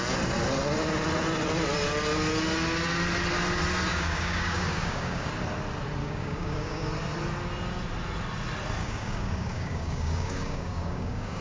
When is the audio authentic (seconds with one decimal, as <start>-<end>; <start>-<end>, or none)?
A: 0.0-3.9; 5.3-6.0; 6.9-8.8